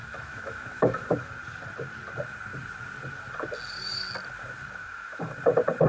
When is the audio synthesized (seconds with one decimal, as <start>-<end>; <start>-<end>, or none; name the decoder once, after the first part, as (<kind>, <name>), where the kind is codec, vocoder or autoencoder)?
0.0-1.3 (autoencoder, DAC-VAE); 4.8-5.3